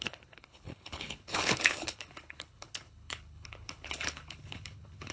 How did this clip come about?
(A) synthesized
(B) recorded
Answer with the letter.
A